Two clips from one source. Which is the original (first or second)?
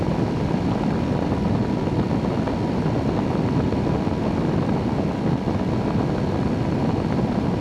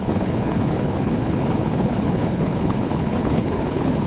first